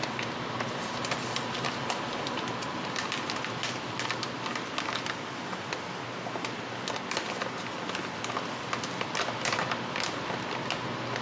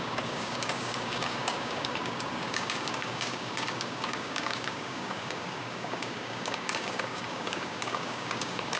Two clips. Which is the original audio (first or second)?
first